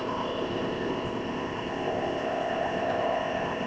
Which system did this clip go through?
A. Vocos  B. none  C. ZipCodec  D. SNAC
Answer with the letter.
C